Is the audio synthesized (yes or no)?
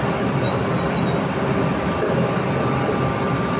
no